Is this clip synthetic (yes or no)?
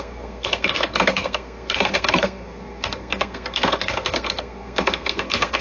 yes